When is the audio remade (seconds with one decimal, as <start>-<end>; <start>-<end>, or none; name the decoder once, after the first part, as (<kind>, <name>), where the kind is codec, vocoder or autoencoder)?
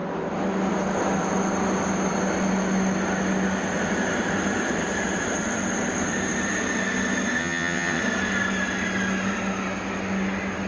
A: 7.4-8.0 (vocoder, HiFi-GAN)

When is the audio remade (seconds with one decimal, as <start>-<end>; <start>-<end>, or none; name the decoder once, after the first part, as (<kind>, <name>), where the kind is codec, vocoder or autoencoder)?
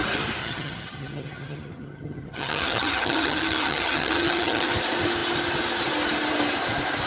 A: 0.4-4.7 (vocoder, HiFi-GAN)